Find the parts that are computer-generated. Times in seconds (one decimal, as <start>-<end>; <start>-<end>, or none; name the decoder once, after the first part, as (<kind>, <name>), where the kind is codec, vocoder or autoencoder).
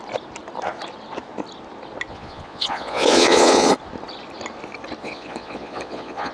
2.1-3.7 (vocoder, Vocos); 5.0-6.3